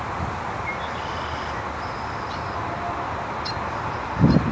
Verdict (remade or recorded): recorded